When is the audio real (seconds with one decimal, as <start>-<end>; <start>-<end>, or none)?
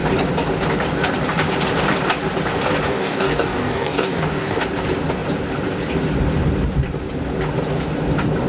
0.0-2.9; 4.6-8.5